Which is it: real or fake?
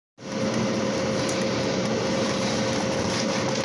real